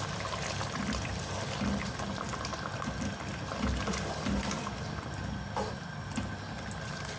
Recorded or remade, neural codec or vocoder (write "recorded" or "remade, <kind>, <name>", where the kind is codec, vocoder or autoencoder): recorded